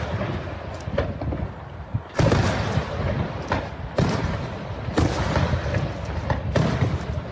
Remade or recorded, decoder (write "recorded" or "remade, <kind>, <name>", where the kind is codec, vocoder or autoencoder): recorded